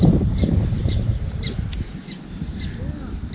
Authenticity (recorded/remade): recorded